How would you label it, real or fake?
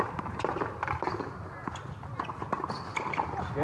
real